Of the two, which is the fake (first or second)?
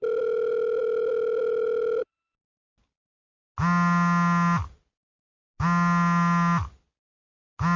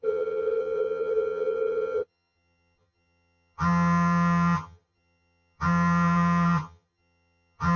second